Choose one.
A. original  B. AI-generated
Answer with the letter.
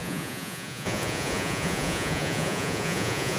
B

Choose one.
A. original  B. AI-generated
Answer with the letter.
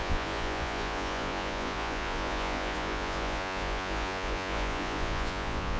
B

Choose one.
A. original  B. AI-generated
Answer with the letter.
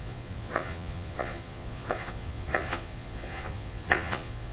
B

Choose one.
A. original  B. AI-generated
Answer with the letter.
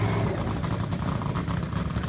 A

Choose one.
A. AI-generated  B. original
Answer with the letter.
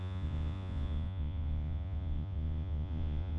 A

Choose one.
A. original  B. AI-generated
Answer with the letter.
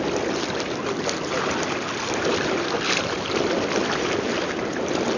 A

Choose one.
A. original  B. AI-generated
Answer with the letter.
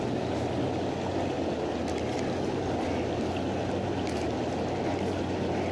A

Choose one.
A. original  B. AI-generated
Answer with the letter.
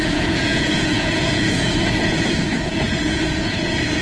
B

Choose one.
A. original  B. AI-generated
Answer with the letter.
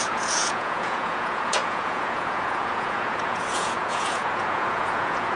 B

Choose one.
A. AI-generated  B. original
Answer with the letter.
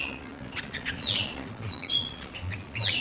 A